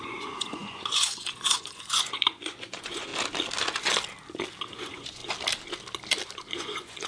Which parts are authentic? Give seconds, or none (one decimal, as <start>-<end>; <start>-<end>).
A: 3.1-4.7; 5.2-6.5